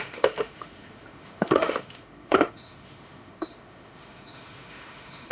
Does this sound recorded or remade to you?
remade